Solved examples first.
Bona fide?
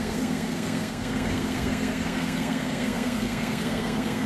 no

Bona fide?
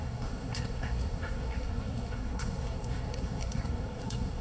no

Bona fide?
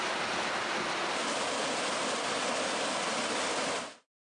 yes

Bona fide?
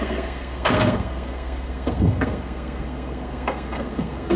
no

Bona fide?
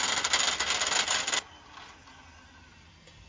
yes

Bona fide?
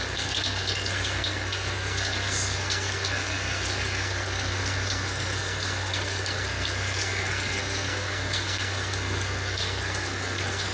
no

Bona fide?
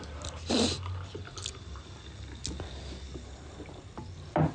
yes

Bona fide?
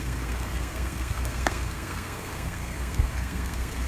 no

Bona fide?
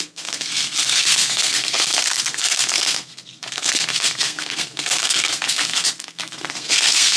no